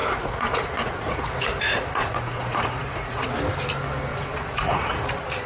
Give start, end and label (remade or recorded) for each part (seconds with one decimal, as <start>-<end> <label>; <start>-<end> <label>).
0.0-3.3 remade; 3.3-4.1 recorded; 4.1-5.1 remade; 5.1-5.5 recorded